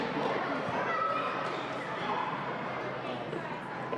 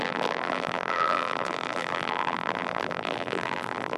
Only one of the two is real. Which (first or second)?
first